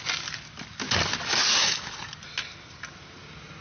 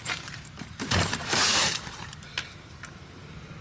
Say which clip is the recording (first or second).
first